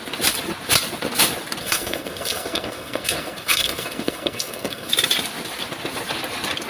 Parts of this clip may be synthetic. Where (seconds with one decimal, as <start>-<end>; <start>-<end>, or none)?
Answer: 1.6-4.9